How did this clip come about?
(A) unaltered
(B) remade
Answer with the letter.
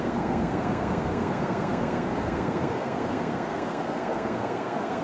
B